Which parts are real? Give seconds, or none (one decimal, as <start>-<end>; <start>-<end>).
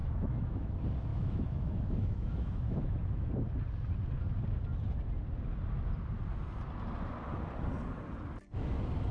0.7-1.1; 3.3-9.1